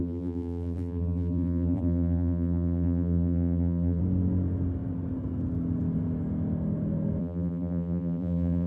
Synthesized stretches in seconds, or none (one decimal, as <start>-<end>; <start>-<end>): 0.0-4.0; 7.2-8.7